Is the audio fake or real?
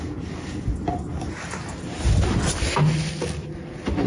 real